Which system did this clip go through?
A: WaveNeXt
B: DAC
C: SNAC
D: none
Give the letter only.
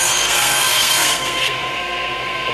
C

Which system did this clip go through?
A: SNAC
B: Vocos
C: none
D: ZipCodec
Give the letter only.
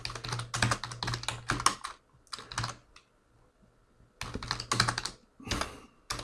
C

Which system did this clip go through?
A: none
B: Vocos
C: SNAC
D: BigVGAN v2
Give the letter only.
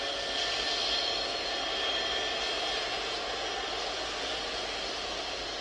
A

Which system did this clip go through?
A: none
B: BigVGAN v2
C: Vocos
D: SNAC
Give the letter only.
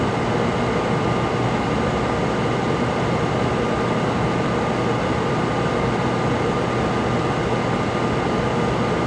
A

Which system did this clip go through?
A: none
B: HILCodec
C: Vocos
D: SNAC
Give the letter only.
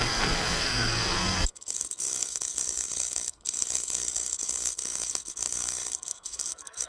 D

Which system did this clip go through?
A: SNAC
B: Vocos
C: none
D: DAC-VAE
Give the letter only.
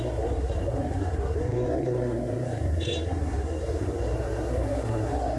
A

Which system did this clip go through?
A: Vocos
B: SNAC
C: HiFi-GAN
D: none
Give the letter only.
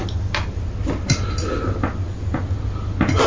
D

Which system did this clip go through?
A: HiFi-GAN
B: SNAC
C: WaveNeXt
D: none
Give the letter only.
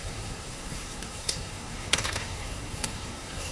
B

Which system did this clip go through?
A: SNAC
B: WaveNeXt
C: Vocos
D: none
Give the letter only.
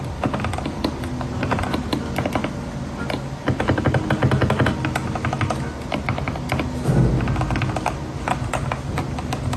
D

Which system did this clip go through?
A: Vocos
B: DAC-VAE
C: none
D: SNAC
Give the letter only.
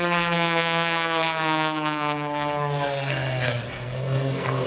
D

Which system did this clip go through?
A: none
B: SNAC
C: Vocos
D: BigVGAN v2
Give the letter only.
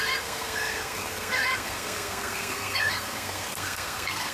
B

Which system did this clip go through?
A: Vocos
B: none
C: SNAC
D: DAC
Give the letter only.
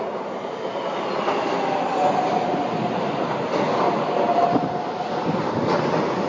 B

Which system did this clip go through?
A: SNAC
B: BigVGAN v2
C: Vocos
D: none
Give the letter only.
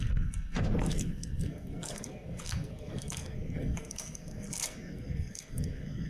A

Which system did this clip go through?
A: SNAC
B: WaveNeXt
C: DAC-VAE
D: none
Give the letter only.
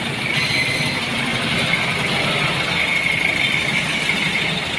D